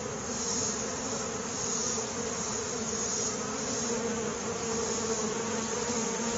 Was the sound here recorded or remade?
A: recorded